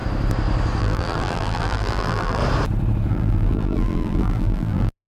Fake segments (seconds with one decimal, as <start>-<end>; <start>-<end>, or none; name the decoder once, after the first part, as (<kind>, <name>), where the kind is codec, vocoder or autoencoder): 0.8-2.4 (vocoder, BigVGAN v2); 3.1-5.1